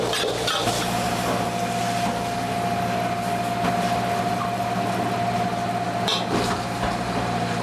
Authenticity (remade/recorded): recorded